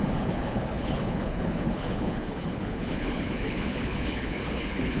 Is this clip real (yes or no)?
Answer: no